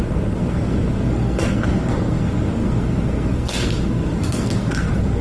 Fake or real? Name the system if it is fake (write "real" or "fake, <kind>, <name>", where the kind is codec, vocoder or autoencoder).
fake, codec, SNAC